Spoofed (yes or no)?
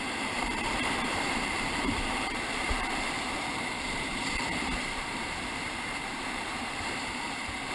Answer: yes